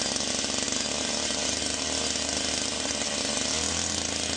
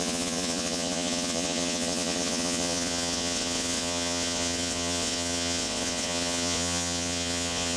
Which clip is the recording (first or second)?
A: first